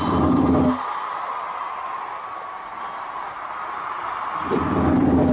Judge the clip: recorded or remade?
recorded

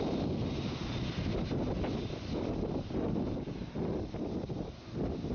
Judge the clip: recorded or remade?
recorded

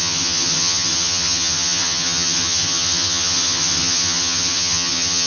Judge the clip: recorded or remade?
remade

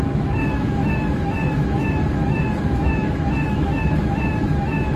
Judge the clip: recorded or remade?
remade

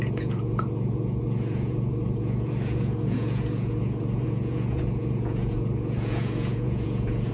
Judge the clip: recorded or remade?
remade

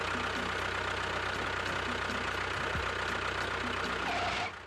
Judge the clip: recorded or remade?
recorded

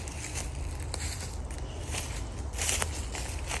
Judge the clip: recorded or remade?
recorded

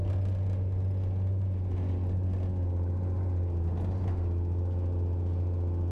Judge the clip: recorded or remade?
recorded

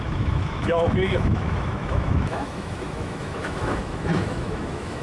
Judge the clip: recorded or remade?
remade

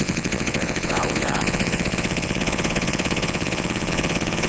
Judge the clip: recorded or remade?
remade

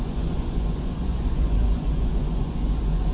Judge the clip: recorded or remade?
remade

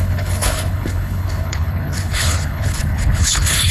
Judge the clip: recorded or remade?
remade